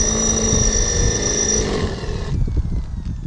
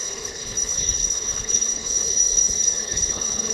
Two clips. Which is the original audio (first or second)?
first